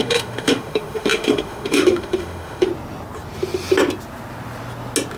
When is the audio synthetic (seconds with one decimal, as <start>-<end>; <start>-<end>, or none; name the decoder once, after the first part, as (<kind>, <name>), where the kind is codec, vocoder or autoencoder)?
0.0-2.7 (autoencoder, DAC-VAE)